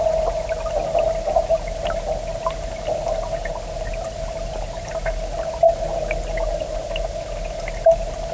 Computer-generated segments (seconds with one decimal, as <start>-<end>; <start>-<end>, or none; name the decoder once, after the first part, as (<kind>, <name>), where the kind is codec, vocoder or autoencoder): none